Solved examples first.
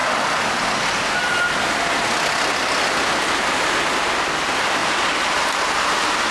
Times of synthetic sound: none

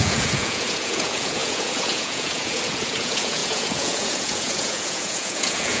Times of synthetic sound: 0.0-5.8 (vocoder, Vocos)

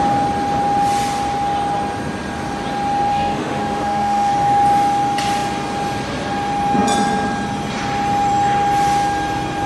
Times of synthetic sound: 3.1-4.3 (autoencoder, DAC-VAE)

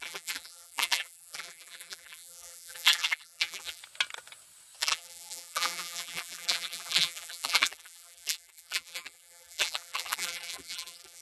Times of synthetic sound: 0.0-3.8 (vocoder, BigVGAN v2); 4.8-11.2

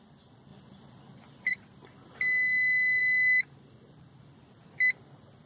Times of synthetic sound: none

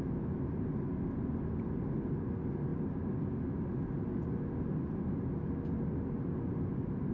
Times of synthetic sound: none

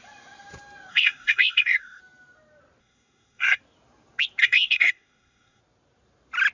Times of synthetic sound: 0.9-2.0 (codec, SNAC); 2.8-3.6; 4.4-5.6